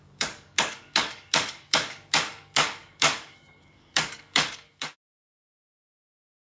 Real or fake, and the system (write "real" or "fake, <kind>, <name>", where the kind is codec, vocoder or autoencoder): fake, codec, DAC